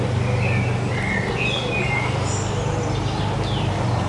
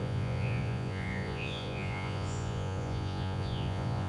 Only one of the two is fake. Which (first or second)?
second